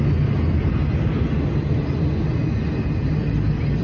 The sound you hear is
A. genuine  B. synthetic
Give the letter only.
A